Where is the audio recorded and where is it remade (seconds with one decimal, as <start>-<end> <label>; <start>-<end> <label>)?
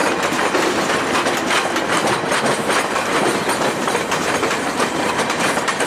0.0-0.9 remade; 0.9-2.0 recorded; 2.0-5.5 remade; 5.5-5.9 recorded